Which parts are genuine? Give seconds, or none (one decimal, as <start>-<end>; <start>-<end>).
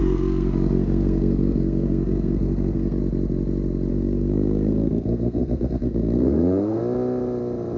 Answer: 3.0-3.9; 6.8-7.8